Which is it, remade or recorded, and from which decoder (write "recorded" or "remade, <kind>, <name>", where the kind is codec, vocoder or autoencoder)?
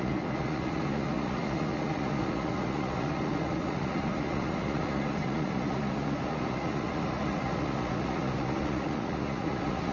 remade, vocoder, Vocos